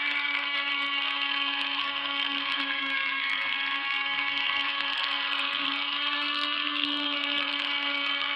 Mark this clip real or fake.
fake